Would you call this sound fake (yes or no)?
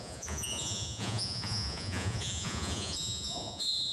yes